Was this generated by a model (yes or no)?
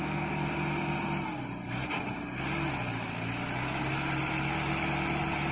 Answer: no